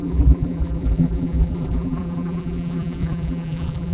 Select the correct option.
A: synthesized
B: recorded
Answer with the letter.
A